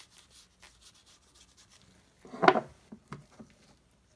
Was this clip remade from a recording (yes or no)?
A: no